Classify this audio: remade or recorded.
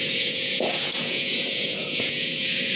remade